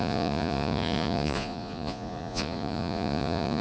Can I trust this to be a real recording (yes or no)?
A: no